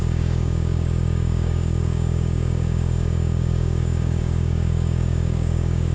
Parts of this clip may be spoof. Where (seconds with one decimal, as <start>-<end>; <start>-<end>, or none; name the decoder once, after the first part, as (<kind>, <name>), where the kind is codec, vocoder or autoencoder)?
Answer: 0.0-5.9 (codec, DAC)